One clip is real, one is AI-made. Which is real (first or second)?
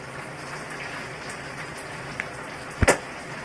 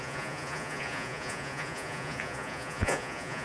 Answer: first